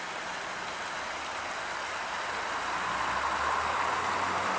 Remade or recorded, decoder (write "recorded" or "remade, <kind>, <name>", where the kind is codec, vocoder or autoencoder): recorded